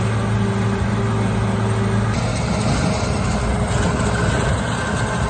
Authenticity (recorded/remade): recorded